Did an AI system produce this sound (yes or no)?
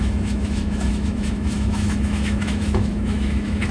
yes